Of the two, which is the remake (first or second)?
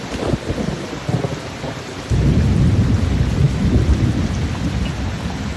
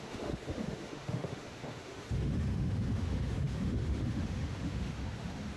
second